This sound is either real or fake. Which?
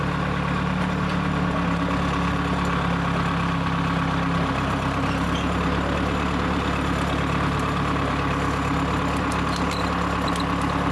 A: real